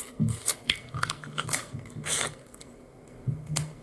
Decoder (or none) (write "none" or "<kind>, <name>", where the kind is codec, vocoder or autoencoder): codec, SNAC